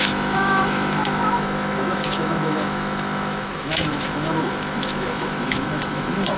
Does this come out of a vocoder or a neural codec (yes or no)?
yes